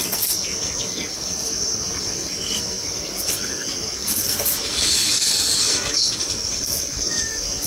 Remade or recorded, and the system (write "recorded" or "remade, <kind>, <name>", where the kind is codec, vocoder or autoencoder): remade, codec, SNAC